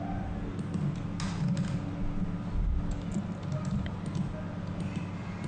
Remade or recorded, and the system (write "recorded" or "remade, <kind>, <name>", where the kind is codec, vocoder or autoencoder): recorded